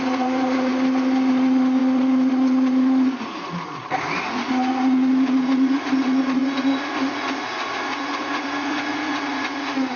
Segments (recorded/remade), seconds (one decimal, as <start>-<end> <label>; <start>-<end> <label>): 0.0-0.7 remade; 0.7-1.3 recorded; 1.3-10.0 remade